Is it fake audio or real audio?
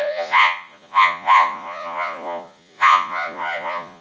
fake